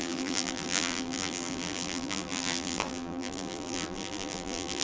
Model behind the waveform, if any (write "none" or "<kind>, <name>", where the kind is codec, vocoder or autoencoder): vocoder, BigVGAN v2